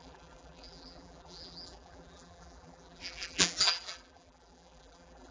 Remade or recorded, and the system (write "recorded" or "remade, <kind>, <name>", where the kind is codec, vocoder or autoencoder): remade, vocoder, BigVGAN v2